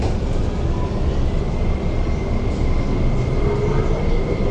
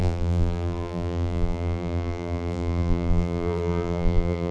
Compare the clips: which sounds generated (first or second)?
second